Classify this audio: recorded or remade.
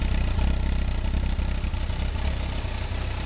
recorded